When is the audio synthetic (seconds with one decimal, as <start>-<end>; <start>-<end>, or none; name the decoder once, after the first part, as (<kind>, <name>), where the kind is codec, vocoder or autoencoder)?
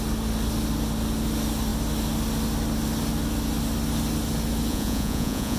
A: 4.7-5.6 (vocoder, Vocos)